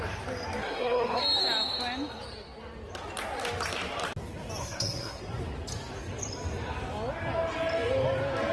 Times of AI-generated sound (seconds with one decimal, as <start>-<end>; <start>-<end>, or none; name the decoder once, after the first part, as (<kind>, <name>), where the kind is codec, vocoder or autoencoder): 0.6-1.2 (codec, SNAC); 4.6-5.2